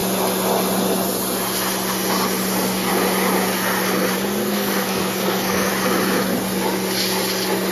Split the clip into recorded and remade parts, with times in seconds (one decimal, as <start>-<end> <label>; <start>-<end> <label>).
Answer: 0.0-4.4 recorded; 4.4-5.7 remade; 5.7-7.7 recorded